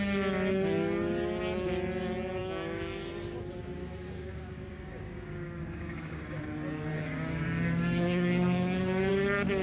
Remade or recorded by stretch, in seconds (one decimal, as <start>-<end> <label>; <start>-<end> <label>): 0.0-2.4 recorded; 2.4-2.9 remade; 2.9-3.8 recorded; 3.8-6.4 remade; 6.4-6.9 recorded; 6.9-9.1 remade; 9.1-9.6 recorded